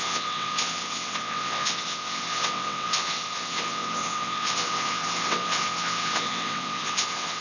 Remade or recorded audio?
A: remade